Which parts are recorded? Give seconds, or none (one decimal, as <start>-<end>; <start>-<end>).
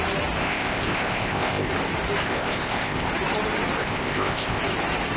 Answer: 0.0-0.4; 1.7-2.2; 3.1-3.8; 4.6-5.2